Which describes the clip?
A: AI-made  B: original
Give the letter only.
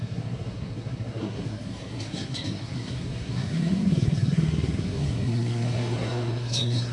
A